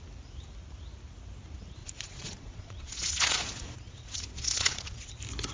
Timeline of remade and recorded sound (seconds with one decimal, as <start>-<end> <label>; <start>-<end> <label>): 0.0-1.8 recorded; 1.8-5.1 remade; 5.1-5.5 recorded

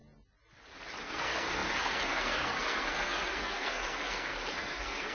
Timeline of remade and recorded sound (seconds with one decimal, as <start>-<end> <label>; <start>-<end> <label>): 0.0-1.0 recorded; 1.0-5.1 remade